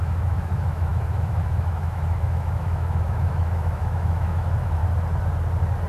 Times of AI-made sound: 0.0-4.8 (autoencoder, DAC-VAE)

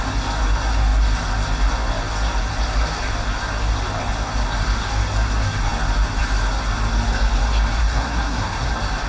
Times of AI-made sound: 7.8-8.7 (codec, SNAC)

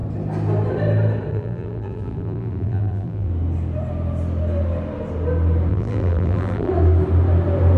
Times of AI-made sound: 1.3-3.3 (vocoder, BigVGAN v2); 5.7-6.7

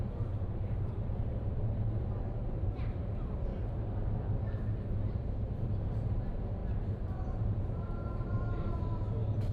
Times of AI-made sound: 0.0-3.5 (vocoder, BigVGAN v2); 4.4-9.5

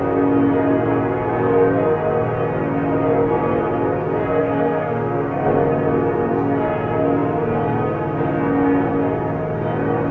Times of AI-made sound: 4.4-5.7 (codec, SNAC)

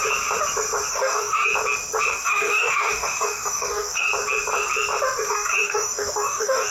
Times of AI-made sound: 0.9-1.5 (codec, DAC); 2.1-4.1; 5.3-6.7

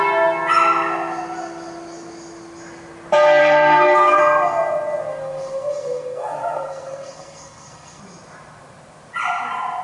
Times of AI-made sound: 3.4-4.2 (codec, SNAC); 5.1-8.0